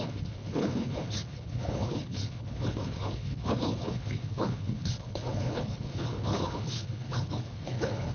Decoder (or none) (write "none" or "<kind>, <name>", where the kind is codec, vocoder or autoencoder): codec, HILCodec